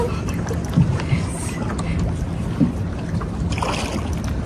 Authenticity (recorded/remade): recorded